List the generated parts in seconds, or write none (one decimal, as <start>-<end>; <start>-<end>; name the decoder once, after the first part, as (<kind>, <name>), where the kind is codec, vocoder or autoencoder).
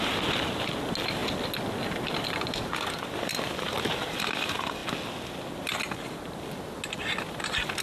none